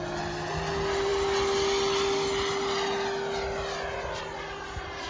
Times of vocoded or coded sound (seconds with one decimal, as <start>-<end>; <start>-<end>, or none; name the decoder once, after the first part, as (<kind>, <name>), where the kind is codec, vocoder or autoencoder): none